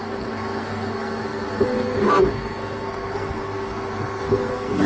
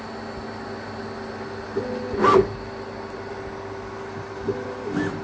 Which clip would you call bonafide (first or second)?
second